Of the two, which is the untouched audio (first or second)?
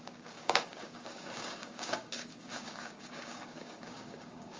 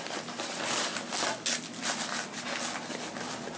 second